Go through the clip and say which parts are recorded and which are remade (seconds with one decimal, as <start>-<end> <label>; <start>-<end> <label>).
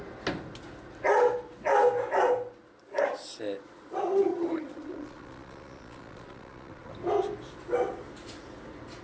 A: 0.0-4.3 recorded; 4.3-6.9 remade; 6.9-9.0 recorded